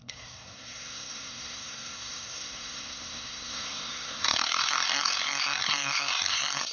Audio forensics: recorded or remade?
remade